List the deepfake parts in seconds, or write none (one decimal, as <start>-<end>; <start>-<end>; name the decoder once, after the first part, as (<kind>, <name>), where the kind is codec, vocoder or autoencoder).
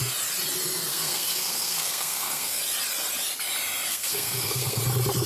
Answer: 0.9-2.6 (codec, SNAC); 3.9-4.8